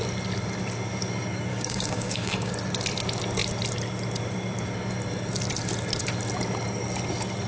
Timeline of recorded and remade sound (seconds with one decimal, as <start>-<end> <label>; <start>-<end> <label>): 0.0-1.5 recorded; 1.5-2.5 remade; 2.5-7.5 recorded